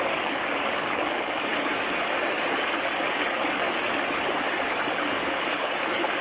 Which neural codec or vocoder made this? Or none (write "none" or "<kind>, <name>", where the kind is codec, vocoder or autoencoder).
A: codec, DAC